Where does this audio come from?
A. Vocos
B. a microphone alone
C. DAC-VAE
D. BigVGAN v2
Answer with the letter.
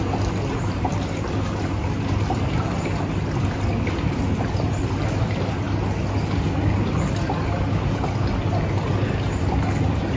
B